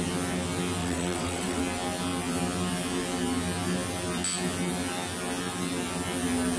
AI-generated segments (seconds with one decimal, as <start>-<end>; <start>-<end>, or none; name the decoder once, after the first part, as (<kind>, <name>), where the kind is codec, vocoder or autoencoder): 0.8-1.6 (vocoder, WaveNeXt)